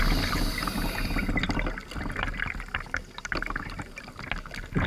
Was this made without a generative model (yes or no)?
yes